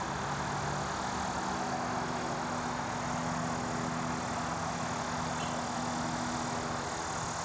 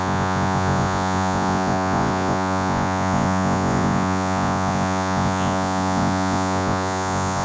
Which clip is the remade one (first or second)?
second